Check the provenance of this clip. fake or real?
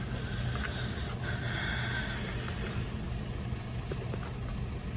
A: real